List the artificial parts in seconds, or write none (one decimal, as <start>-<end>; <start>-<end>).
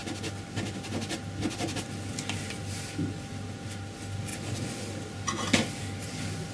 none